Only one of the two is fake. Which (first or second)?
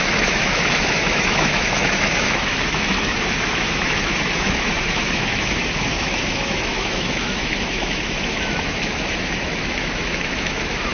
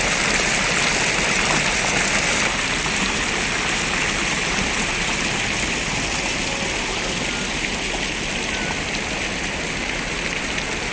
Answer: first